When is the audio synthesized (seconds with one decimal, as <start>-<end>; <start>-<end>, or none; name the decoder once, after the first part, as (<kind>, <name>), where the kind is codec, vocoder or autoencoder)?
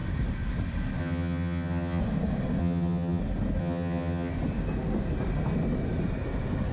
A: 1.0-2.0 (vocoder, HiFi-GAN); 2.6-3.2; 3.6-4.3